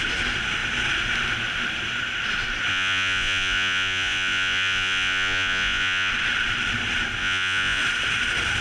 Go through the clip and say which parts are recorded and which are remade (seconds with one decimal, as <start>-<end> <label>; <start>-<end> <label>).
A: 0.0-2.7 recorded; 2.7-6.1 remade; 6.1-7.2 recorded; 7.2-7.8 remade; 7.8-8.6 recorded